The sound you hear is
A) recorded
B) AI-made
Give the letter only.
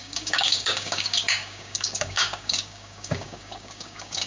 B